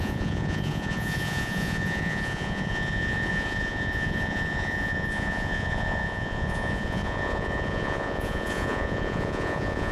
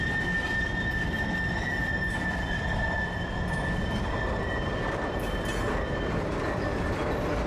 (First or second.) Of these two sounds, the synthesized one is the first